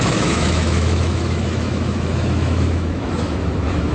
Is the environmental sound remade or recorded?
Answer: remade